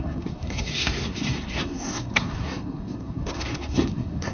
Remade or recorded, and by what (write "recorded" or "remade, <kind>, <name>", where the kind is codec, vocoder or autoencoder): remade, codec, SNAC